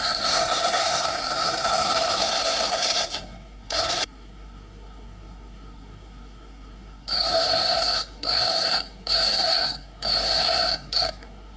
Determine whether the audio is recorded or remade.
remade